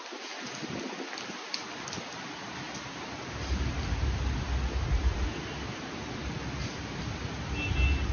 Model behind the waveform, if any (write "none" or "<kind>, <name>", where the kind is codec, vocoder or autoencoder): none